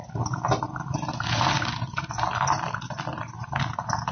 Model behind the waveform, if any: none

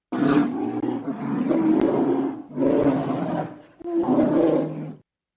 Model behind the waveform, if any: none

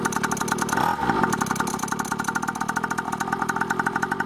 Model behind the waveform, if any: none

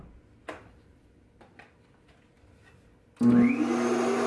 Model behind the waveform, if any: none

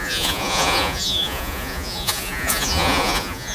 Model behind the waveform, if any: vocoder, Vocos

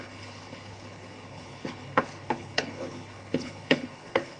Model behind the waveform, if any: codec, HILCodec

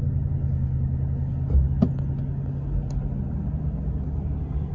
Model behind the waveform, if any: none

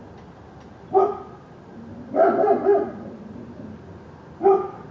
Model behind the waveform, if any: none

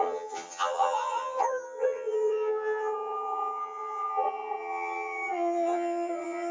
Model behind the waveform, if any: vocoder, HiFi-GAN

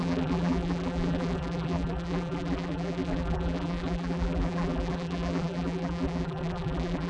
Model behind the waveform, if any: vocoder, BigVGAN v2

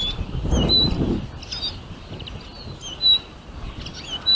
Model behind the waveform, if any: none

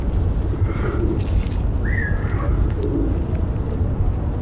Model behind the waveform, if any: none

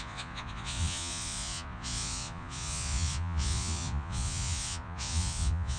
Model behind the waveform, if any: vocoder, Vocos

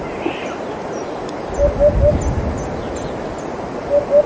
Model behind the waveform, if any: none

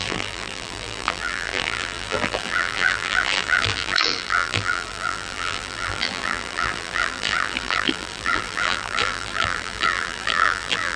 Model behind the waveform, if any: vocoder, BigVGAN v2